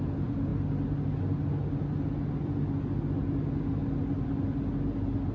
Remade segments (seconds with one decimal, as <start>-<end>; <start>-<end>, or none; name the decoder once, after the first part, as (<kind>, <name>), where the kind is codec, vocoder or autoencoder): none